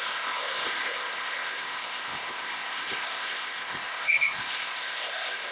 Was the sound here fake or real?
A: fake